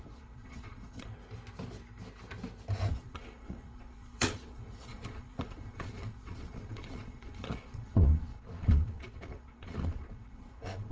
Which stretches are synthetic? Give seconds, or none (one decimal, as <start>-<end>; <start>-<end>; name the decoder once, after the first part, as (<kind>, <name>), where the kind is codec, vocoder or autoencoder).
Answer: 0.0-1.1 (vocoder, Vocos); 2.9-10.9